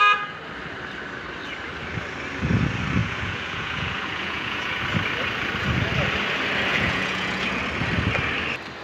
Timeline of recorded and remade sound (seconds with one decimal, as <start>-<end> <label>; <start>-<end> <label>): 0.0-3.0 recorded; 3.0-4.8 remade; 4.8-6.7 recorded; 6.7-7.6 remade; 7.6-8.8 recorded